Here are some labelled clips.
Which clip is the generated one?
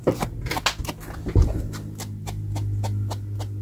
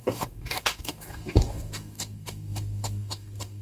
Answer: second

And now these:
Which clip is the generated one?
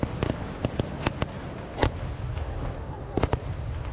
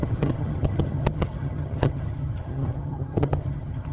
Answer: second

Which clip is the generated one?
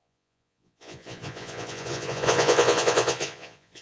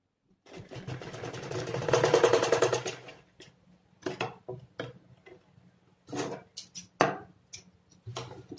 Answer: first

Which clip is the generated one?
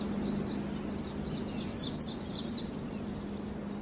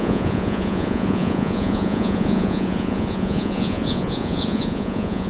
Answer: second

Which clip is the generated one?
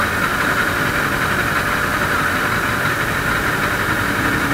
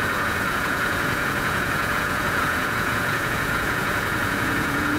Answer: second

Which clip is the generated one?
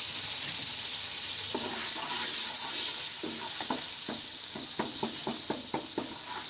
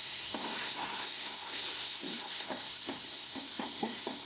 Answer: second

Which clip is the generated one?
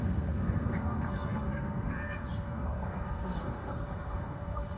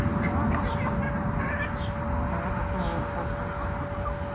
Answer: first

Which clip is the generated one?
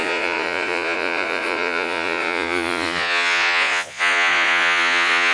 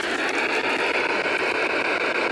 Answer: first